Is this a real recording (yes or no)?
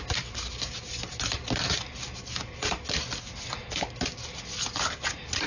yes